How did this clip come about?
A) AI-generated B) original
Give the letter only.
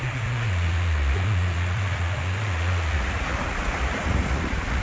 A